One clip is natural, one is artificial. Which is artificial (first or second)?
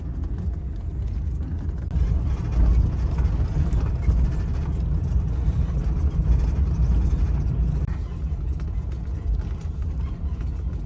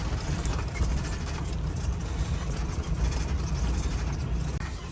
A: second